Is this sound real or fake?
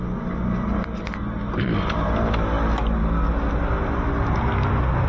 real